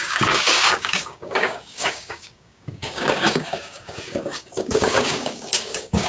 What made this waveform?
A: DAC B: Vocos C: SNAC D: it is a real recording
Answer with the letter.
A